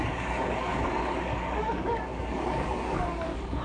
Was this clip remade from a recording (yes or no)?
yes